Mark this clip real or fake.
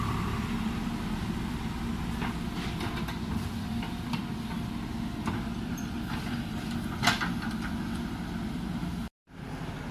real